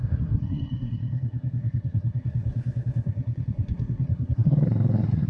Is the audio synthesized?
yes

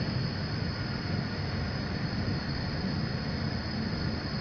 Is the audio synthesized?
no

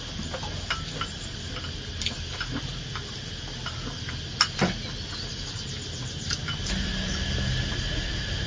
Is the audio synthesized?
no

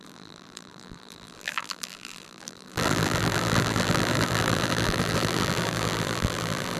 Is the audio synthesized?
yes